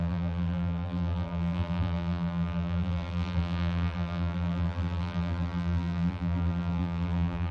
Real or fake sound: fake